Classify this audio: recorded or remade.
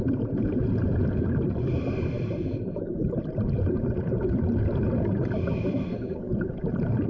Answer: remade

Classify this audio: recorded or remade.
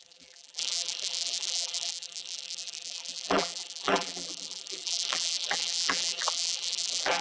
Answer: remade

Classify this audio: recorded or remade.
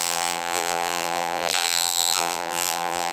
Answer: remade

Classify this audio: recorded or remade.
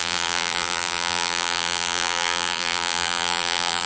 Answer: remade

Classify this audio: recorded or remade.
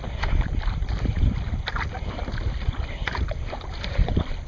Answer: recorded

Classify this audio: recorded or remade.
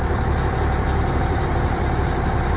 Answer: remade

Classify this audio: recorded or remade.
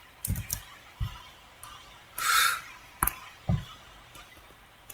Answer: remade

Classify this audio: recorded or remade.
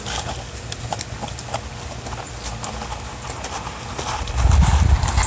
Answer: recorded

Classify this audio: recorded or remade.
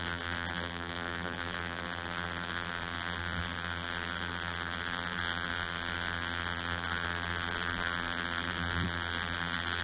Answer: remade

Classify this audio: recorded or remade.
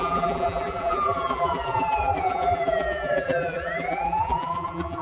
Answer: remade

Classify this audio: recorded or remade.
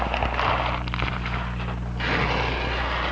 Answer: recorded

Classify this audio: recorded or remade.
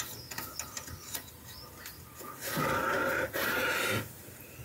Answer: recorded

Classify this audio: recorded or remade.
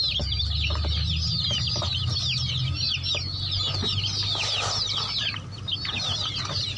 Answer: recorded